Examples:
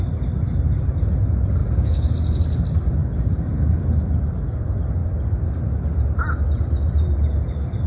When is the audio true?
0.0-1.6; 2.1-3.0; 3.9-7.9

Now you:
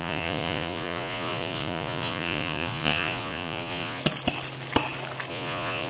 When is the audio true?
4.0-5.3